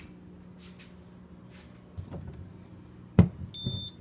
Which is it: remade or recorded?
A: recorded